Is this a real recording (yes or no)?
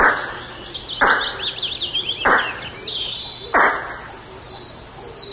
yes